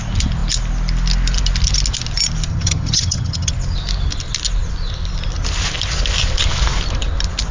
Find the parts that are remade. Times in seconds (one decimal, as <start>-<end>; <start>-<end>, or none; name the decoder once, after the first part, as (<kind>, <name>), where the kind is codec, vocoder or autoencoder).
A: 2.5-3.5 (vocoder, HiFi-GAN)

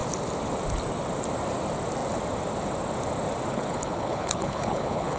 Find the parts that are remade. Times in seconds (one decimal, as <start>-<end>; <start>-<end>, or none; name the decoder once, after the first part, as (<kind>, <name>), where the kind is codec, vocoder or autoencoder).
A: 3.5-5.2 (codec, HILCodec)

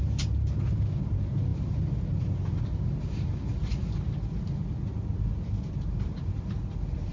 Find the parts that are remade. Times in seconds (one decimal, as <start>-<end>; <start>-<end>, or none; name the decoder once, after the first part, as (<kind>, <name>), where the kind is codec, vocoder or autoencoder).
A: none

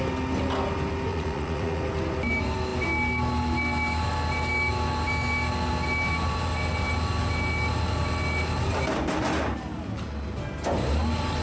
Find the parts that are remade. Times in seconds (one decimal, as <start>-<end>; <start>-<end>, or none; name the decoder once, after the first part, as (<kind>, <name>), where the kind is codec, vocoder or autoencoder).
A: 1.1-1.8 (vocoder, Vocos)

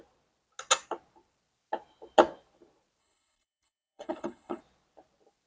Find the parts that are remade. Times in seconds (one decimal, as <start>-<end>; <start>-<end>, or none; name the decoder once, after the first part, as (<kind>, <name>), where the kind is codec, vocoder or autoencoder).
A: 3.0-4.6 (codec, HILCodec)